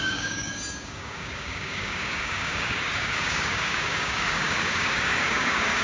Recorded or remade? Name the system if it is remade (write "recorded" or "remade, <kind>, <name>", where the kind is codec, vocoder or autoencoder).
remade, codec, DAC